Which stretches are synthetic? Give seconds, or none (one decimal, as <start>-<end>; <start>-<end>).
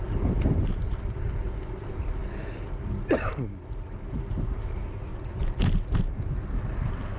2.2-4.0; 5.1-6.6